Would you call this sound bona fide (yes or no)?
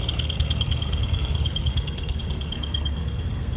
no